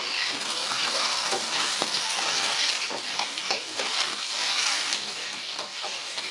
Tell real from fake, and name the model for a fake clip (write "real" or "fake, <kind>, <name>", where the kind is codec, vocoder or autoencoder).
fake, codec, DAC